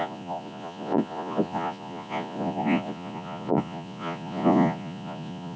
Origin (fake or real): fake